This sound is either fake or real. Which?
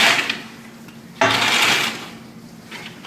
real